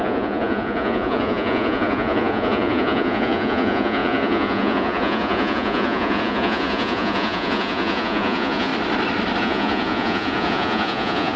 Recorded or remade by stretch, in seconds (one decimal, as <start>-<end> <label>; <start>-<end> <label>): 0.0-8.7 remade; 8.7-9.4 recorded; 9.4-11.4 remade